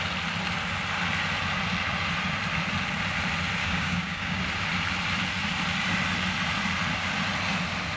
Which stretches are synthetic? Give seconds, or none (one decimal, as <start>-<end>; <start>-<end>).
3.6-4.4